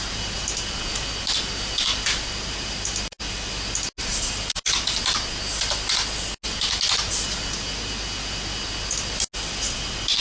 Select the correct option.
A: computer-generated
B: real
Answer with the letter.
B